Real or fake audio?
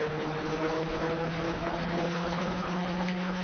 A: fake